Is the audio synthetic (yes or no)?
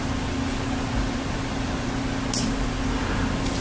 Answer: no